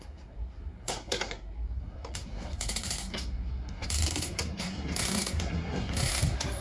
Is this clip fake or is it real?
fake